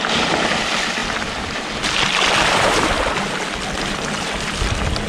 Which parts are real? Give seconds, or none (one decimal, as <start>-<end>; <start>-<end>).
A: 0.0-5.1